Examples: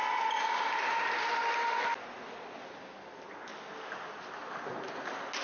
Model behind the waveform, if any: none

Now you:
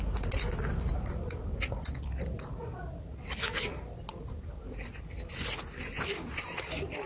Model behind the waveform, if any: none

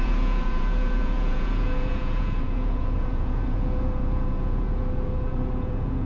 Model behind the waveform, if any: vocoder, Vocos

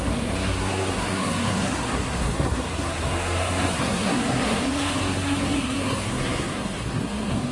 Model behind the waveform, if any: codec, SNAC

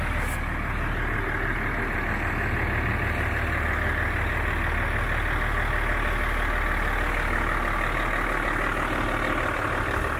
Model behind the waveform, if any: none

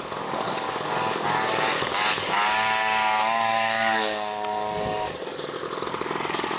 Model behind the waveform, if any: codec, DAC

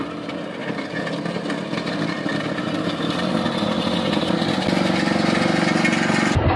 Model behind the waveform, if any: none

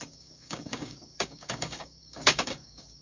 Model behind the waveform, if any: codec, DAC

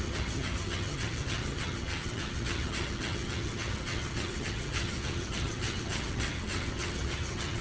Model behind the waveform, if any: vocoder, HiFi-GAN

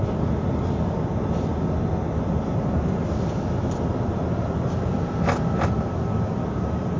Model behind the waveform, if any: none